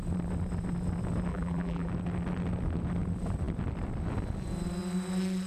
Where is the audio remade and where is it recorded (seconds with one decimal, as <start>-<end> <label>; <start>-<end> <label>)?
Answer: 0.0-1.3 recorded; 1.3-1.9 remade; 1.9-5.5 recorded